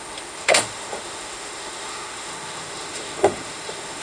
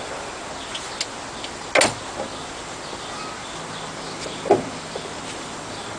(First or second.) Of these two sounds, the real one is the second